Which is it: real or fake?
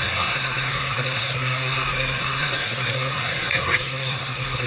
fake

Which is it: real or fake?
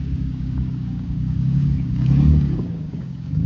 fake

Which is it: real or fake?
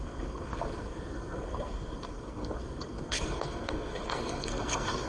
fake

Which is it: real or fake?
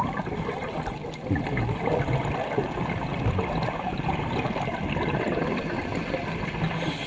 real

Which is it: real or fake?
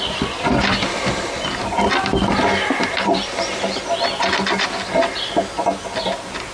real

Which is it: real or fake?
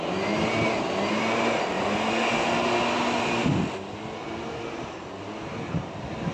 real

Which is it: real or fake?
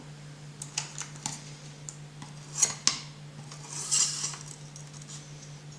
real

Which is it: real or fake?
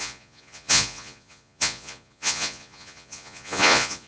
fake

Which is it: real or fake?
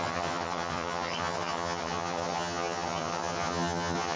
fake